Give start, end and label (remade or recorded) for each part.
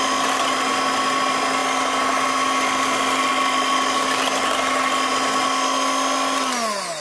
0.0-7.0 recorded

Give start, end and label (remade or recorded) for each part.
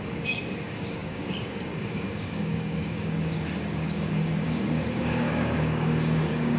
0.0-6.6 remade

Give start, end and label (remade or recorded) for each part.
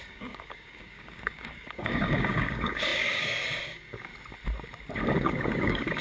0.0-4.1 remade; 4.1-5.0 recorded; 5.0-6.0 remade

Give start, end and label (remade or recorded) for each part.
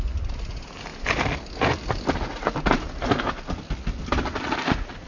0.0-5.1 recorded